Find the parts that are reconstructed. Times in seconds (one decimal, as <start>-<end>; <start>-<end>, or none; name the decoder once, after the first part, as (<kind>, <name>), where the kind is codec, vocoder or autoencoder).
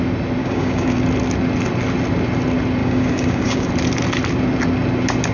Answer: 0.4-1.0 (codec, DAC); 2.8-3.7